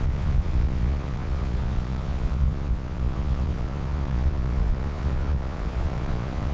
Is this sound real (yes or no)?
no